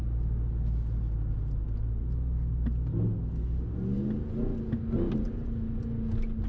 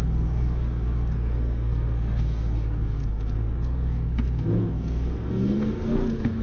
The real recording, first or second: first